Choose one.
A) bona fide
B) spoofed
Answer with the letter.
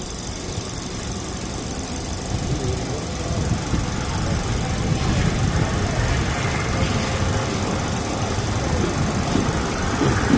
A